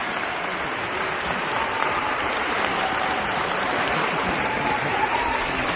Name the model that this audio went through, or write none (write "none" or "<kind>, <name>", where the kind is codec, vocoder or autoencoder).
vocoder, BigVGAN v2